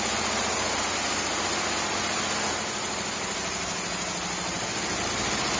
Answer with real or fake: real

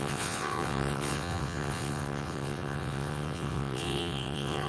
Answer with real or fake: fake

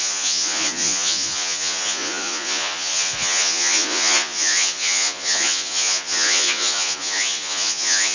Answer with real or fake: fake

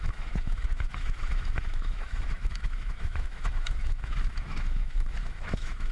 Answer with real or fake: fake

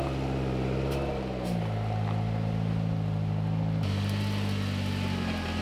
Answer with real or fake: real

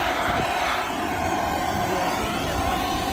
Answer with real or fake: real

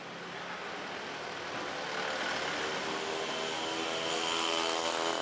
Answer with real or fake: real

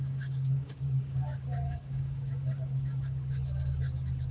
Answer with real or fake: fake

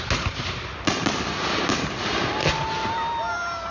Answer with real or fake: real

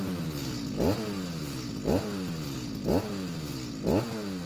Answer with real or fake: real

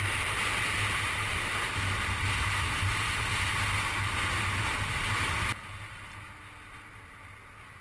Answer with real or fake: real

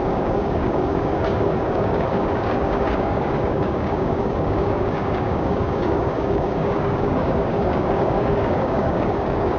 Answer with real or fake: fake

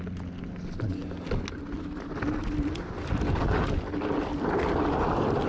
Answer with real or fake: real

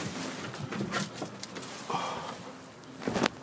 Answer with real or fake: real